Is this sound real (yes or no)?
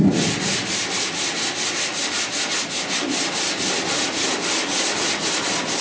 yes